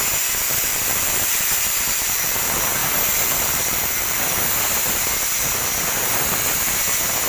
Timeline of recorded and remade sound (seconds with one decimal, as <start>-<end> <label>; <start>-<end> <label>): 0.0-0.7 recorded; 0.7-2.3 remade; 2.3-2.8 recorded; 2.8-4.2 remade; 4.2-7.3 recorded